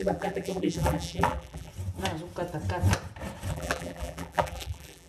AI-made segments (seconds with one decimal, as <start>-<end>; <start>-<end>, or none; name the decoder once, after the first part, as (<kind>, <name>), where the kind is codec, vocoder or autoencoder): 0.0-1.7 (vocoder, BigVGAN v2); 3.5-5.1